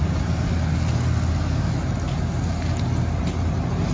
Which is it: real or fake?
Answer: real